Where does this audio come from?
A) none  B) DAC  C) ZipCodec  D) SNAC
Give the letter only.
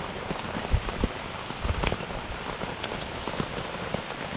A